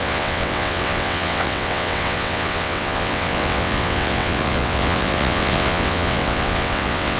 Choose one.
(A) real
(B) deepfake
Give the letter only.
B